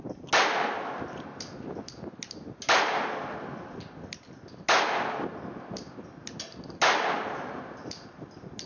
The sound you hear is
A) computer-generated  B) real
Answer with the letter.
B